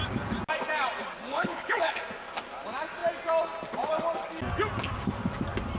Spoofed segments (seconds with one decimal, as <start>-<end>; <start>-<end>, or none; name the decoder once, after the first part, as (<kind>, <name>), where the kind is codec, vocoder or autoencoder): 1.3-2.0 (codec, HILCodec)